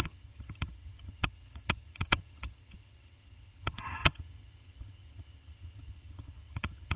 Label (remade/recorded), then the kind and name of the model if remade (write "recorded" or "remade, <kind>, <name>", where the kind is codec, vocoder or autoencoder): remade, vocoder, HiFi-GAN